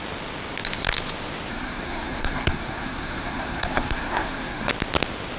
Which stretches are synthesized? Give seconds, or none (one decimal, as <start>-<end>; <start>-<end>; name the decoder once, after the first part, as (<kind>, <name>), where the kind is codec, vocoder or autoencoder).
1.5-4.7 (codec, SNAC)